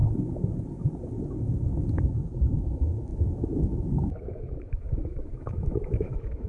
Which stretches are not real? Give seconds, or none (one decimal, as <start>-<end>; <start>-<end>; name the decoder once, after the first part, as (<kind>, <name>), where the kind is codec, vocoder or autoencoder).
2.0-6.5 (autoencoder, DAC-VAE)